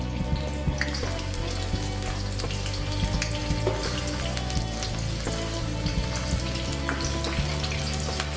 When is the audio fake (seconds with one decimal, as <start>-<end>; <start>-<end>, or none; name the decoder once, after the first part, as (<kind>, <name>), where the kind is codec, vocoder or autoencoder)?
none